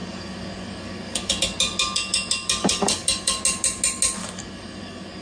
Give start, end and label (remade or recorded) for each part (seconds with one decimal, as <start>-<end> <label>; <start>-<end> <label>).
0.0-1.4 remade; 1.4-2.6 recorded; 2.6-3.4 remade; 3.4-4.2 recorded; 4.2-5.2 remade